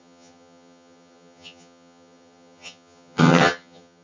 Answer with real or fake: fake